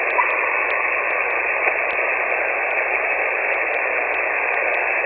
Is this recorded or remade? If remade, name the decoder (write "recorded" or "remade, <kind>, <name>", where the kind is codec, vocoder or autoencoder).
recorded